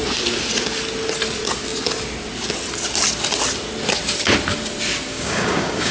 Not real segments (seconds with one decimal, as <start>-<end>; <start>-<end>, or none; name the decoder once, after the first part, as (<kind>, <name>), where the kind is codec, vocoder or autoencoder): 5.1-5.9 (codec, DAC)